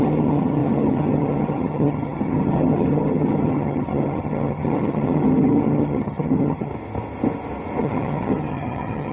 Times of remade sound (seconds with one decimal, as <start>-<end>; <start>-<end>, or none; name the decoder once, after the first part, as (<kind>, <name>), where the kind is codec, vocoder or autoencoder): 0.0-6.7 (vocoder, HiFi-GAN); 7.8-9.1